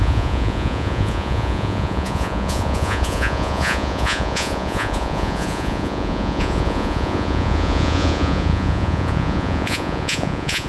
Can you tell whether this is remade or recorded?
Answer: remade